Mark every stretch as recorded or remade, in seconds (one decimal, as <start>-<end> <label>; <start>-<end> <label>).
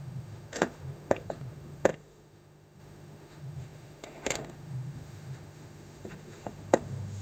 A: 0.0-7.2 remade